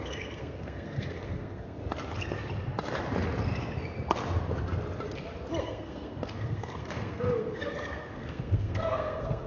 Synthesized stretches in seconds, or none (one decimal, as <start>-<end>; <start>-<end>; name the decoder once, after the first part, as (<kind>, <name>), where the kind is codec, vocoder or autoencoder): 0.0-1.8 (codec, SNAC); 5.6-9.5